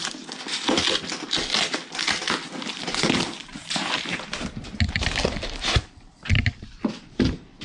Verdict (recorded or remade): recorded